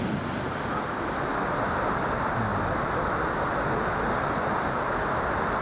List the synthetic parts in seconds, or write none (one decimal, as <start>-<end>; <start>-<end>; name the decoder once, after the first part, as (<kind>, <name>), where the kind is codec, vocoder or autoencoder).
none